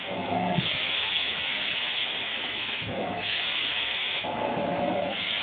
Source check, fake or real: fake